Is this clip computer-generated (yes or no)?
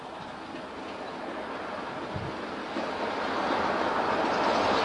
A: no